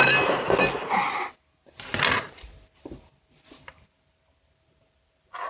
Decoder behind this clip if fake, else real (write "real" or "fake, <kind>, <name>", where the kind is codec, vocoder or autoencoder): real